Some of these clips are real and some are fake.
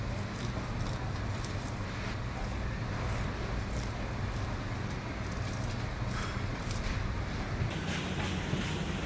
real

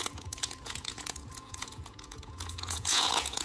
fake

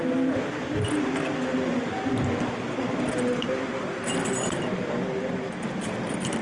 fake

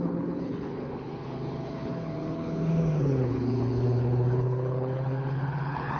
fake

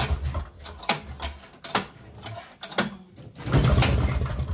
real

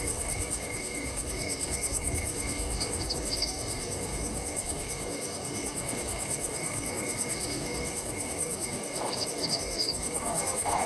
fake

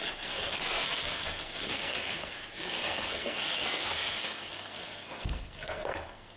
fake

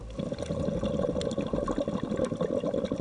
real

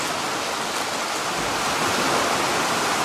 real